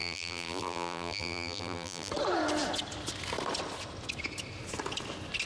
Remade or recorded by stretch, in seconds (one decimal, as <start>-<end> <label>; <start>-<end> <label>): 0.0-2.1 remade; 2.1-5.5 recorded